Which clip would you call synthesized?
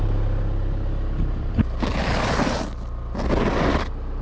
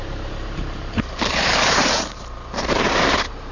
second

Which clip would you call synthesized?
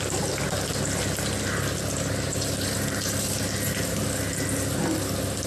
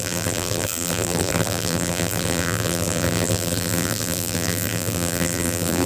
second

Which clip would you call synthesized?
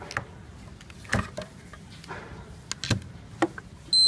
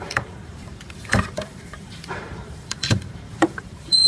second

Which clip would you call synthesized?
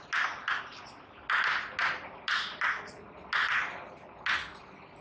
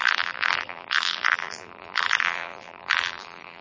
second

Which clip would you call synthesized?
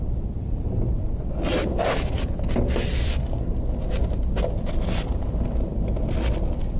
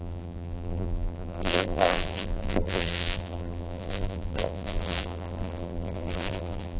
second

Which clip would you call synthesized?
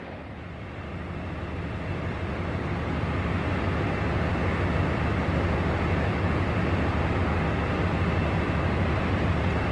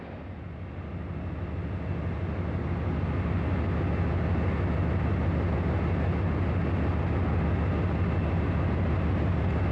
first